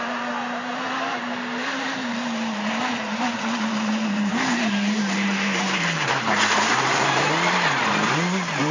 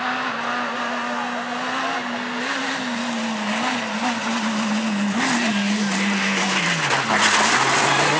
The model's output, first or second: first